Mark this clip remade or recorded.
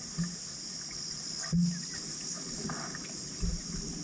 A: recorded